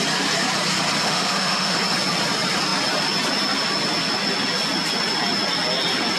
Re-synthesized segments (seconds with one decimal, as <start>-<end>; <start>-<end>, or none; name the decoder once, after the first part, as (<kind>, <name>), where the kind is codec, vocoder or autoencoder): 1.0-1.8 (autoencoder, DAC-VAE)